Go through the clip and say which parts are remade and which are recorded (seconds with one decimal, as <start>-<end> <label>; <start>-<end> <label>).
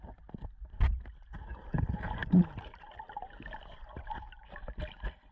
0.0-5.3 recorded